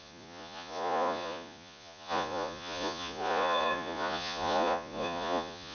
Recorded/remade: remade